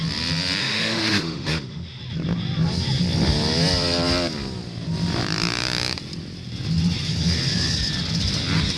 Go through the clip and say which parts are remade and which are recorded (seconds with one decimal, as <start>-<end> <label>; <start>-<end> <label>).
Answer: 0.0-0.6 recorded; 0.6-2.0 remade; 2.0-8.8 recorded